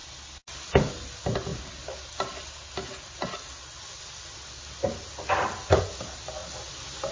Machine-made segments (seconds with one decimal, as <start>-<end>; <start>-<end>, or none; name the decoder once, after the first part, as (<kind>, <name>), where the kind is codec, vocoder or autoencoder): none

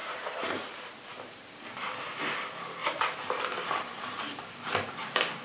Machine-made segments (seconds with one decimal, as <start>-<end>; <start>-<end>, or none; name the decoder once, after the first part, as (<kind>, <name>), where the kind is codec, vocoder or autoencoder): 0.0-1.6 (vocoder, BigVGAN v2)

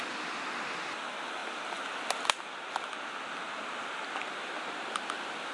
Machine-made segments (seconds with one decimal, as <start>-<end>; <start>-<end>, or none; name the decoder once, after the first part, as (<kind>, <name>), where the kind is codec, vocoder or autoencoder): none

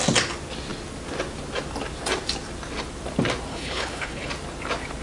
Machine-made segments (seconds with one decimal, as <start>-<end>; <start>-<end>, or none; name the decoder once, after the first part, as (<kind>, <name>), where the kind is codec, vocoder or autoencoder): 3.5-4.3 (codec, HILCodec)